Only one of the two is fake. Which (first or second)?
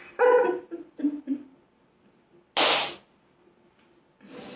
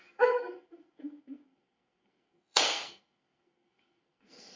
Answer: second